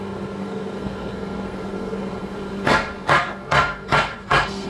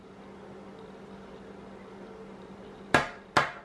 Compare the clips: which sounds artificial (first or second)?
first